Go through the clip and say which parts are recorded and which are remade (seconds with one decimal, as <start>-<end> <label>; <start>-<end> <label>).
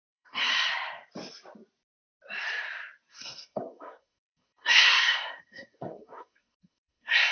0.0-0.5 remade; 0.5-3.1 recorded; 3.1-7.3 remade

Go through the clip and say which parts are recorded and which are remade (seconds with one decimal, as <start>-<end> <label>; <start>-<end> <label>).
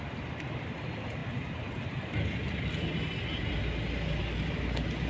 0.0-5.1 recorded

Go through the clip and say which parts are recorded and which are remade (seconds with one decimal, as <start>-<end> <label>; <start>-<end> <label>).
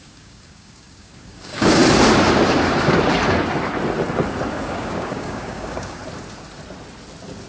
0.0-1.8 remade; 1.8-4.5 recorded; 4.5-6.0 remade; 6.0-7.5 recorded